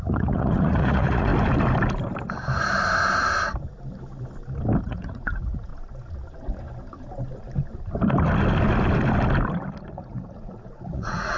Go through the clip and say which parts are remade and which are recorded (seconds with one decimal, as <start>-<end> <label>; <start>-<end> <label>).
0.0-1.3 remade; 1.3-4.8 recorded; 4.8-5.7 remade; 5.7-9.9 recorded; 9.9-11.4 remade